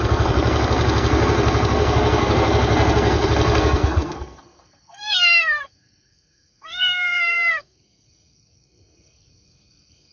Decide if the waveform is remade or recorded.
remade